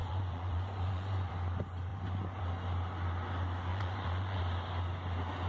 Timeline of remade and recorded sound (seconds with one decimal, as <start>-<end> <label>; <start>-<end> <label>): 0.0-1.3 remade; 1.3-1.9 recorded; 1.9-2.4 remade; 2.4-3.7 recorded; 3.7-4.4 remade; 4.4-5.5 recorded